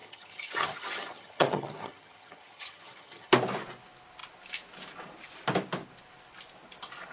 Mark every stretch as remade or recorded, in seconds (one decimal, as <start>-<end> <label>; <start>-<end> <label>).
0.0-3.3 remade; 3.3-7.1 recorded